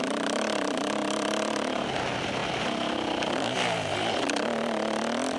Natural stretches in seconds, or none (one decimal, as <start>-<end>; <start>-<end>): 0.0-5.4